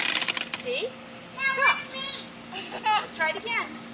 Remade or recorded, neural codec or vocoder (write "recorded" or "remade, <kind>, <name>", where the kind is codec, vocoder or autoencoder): recorded